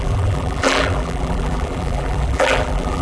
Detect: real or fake fake